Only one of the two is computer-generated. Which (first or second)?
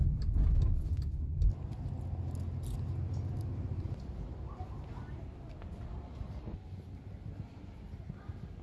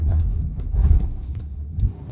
second